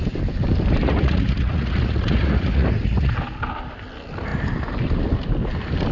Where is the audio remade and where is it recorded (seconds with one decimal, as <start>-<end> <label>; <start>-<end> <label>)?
0.0-0.8 recorded; 0.8-3.1 remade; 3.1-5.9 recorded